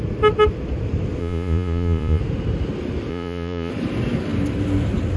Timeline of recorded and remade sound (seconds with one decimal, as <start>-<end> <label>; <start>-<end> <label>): 0.0-1.2 recorded; 1.2-2.2 remade; 2.2-3.1 recorded; 3.1-3.7 remade; 3.7-5.2 recorded